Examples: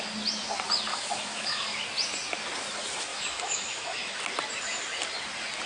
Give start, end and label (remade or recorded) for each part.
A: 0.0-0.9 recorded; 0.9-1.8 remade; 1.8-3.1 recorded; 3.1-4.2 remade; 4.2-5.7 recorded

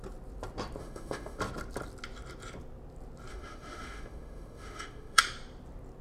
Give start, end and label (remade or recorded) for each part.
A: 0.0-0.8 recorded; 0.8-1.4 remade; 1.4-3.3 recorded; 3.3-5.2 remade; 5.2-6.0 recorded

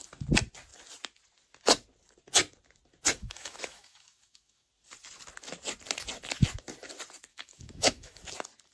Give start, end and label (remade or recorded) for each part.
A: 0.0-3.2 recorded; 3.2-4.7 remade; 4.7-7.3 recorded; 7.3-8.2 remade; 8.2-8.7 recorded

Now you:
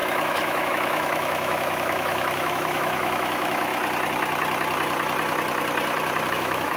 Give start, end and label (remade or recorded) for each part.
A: 0.0-3.7 remade; 3.7-6.3 recorded; 6.3-6.8 remade